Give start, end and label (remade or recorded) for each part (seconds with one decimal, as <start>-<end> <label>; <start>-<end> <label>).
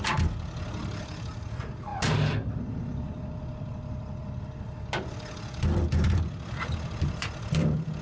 0.0-8.0 recorded